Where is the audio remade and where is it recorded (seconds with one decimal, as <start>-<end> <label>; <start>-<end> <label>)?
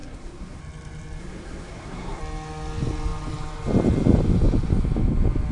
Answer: 0.0-0.6 remade; 0.6-1.2 recorded; 1.2-2.2 remade; 2.2-5.5 recorded